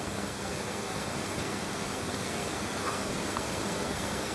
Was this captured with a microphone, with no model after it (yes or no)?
no